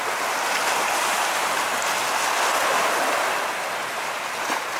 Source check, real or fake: real